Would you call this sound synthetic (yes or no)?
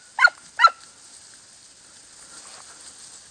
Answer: no